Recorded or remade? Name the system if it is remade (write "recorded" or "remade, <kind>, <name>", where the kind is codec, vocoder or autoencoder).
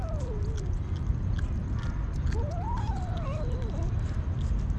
recorded